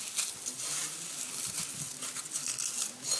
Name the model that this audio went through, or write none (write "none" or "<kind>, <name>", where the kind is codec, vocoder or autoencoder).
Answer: none